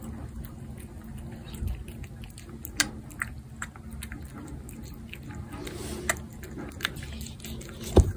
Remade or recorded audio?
recorded